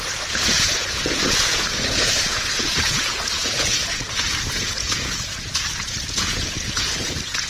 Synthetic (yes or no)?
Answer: yes